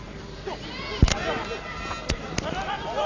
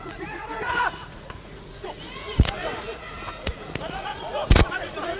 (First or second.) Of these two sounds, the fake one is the second